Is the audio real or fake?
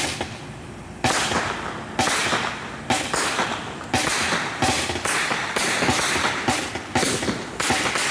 real